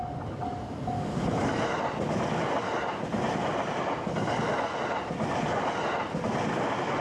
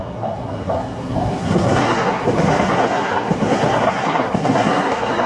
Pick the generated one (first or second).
second